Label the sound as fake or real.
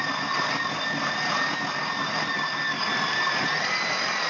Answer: real